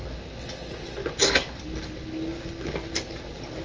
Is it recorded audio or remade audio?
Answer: recorded